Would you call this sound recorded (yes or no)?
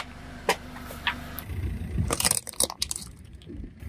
no